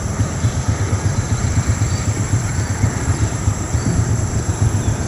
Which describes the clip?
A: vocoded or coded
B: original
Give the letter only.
A